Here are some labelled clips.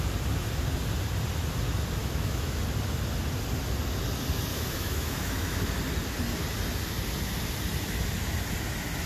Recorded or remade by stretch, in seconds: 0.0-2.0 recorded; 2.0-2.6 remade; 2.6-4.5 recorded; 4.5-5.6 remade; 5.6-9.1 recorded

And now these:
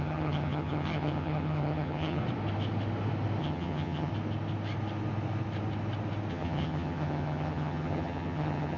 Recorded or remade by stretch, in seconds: 0.0-2.2 remade; 2.2-3.4 recorded; 3.4-4.1 remade; 4.1-6.3 recorded; 6.3-8.8 remade

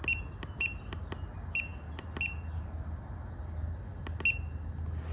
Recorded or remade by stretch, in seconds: 0.0-5.1 recorded

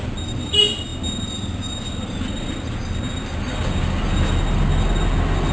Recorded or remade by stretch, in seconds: 0.0-5.5 recorded

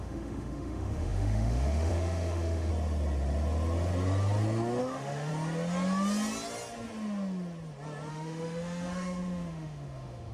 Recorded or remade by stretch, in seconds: 0.0-2.7 remade; 2.7-4.8 recorded; 4.8-5.3 remade; 5.3-8.1 recorded; 8.1-10.3 remade

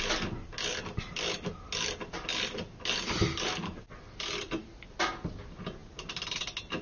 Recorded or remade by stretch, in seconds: 0.0-6.8 recorded

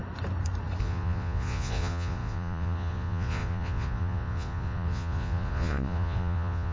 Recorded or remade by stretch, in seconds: 0.0-0.8 recorded; 0.8-6.7 remade